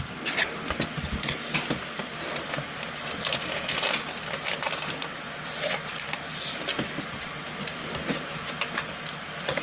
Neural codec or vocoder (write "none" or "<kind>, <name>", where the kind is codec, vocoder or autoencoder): none